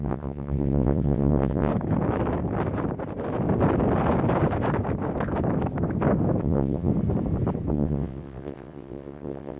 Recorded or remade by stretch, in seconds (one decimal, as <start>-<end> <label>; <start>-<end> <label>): 0.0-1.7 remade; 1.7-6.4 recorded; 6.4-6.9 remade; 6.9-7.7 recorded; 7.7-9.6 remade